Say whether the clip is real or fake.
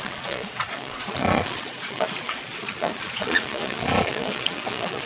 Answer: fake